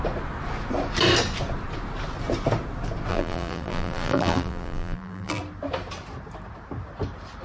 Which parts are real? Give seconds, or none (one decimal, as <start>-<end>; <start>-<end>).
0.0-3.1; 5.4-7.4